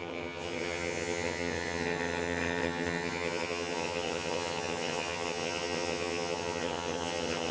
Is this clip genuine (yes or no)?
no